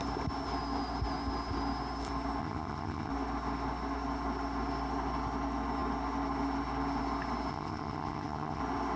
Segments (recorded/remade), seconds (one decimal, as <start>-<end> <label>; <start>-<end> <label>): 0.0-2.4 recorded; 2.4-3.1 remade; 3.1-7.5 recorded; 7.5-8.6 remade; 8.6-9.0 recorded